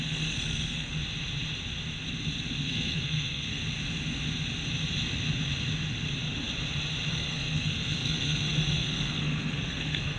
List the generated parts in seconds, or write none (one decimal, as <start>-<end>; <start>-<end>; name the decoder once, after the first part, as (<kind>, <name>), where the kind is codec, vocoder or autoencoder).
0.0-0.9 (codec, SNAC); 2.6-3.6; 7.1-10.2